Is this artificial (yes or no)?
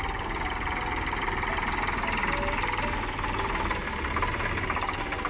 no